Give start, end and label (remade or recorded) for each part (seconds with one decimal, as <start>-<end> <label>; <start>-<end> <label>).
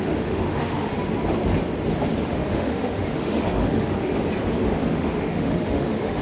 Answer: 0.0-0.9 remade; 0.9-2.2 recorded; 2.2-4.2 remade; 4.2-4.9 recorded; 4.9-6.2 remade